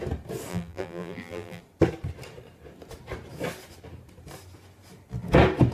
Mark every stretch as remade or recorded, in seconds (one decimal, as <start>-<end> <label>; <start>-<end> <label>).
0.0-0.5 recorded; 0.5-1.6 remade; 1.6-5.7 recorded